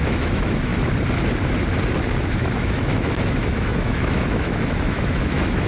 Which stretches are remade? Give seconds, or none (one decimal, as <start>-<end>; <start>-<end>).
0.0-0.7; 2.3-5.7